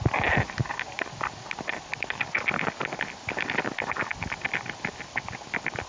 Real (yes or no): yes